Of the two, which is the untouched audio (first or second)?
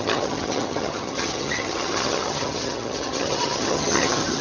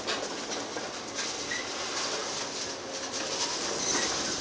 second